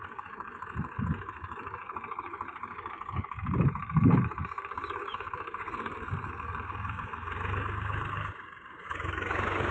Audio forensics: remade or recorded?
remade